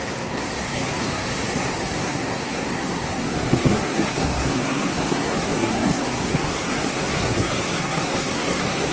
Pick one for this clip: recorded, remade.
remade